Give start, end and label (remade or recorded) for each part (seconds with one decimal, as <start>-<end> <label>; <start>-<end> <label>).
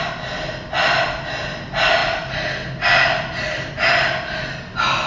0.0-5.1 recorded